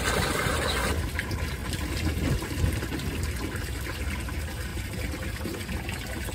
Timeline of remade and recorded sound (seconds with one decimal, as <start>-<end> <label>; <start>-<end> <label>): 0.0-1.6 recorded; 1.6-4.0 remade; 4.0-4.7 recorded; 4.7-5.3 remade; 5.3-6.3 recorded